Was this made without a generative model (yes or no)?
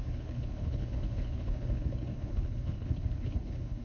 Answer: no